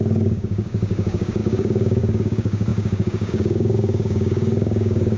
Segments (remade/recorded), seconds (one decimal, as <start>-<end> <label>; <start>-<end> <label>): 0.0-5.2 remade